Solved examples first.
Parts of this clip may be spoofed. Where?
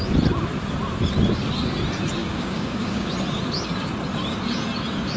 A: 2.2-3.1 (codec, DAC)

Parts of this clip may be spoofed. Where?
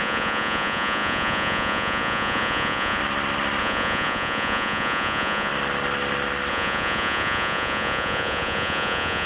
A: 0.0-3.0 (vocoder, Vocos); 3.6-5.5; 6.5-9.3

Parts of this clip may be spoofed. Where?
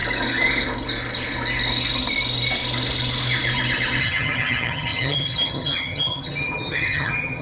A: 4.0-7.4 (vocoder, HiFi-GAN)